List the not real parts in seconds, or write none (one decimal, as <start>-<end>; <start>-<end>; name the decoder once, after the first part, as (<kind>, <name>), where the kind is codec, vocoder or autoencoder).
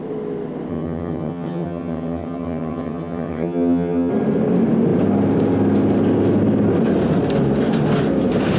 0.7-4.1 (vocoder, HiFi-GAN)